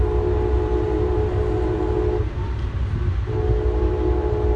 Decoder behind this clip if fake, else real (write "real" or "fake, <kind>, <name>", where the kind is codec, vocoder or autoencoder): real